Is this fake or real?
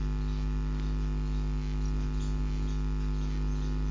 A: real